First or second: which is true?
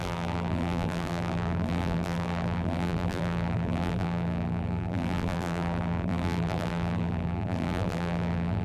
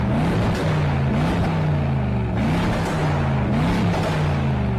second